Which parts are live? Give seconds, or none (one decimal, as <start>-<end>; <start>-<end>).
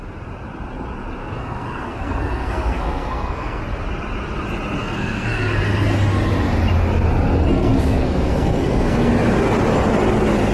0.0-1.2; 3.6-4.8; 5.6-7.4; 9.1-10.5